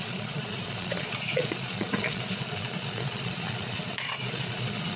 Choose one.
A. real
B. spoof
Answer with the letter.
B